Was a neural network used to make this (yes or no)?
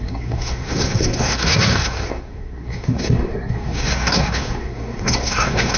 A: yes